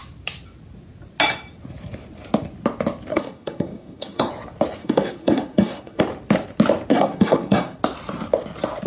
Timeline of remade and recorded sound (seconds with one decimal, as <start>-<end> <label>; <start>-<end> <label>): 0.0-3.1 recorded; 3.1-4.3 remade; 4.3-4.8 recorded; 4.8-6.0 remade; 6.0-6.9 recorded; 6.9-7.8 remade; 7.8-8.9 recorded